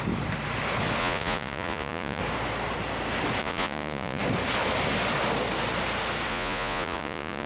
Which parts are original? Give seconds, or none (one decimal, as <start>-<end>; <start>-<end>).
0.0-1.0; 2.2-3.4; 4.2-6.3